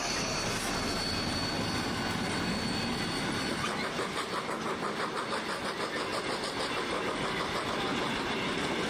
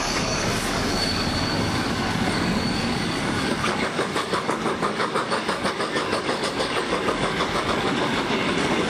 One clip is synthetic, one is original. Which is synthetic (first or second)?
second